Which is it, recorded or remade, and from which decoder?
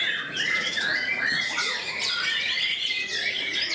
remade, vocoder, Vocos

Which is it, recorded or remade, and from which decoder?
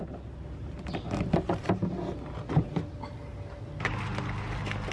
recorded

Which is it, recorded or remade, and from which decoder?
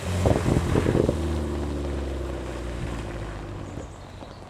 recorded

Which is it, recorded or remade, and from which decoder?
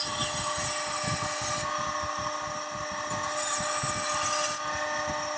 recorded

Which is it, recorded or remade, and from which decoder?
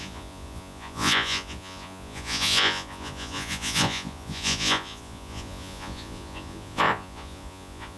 remade, vocoder, Vocos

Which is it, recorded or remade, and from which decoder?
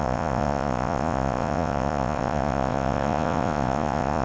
remade, vocoder, Vocos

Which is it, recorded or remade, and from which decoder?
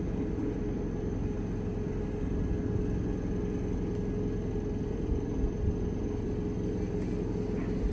recorded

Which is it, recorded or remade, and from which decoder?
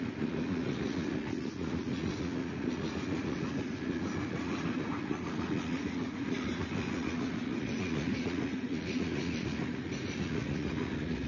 remade, vocoder, Vocos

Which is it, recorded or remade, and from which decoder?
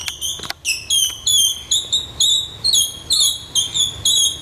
recorded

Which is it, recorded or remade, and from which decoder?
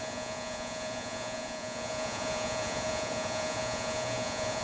remade, vocoder, Vocos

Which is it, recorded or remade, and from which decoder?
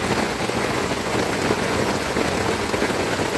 remade, vocoder, Vocos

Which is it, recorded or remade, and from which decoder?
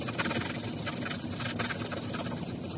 recorded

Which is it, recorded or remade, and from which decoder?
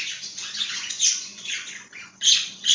remade, vocoder, Vocos